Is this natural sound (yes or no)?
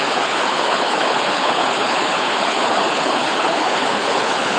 no